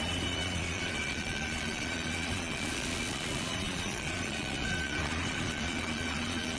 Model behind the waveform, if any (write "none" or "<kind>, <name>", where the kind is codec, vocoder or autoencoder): vocoder, Vocos